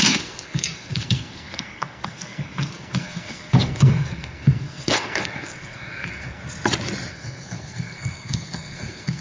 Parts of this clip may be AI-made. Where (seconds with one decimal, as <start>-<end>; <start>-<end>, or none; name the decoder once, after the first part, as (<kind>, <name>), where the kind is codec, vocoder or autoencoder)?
0.0-6.4 (codec, SNAC); 7.1-9.2